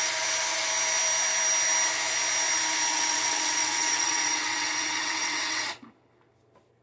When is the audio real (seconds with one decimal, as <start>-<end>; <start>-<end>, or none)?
0.0-2.9; 5.6-6.8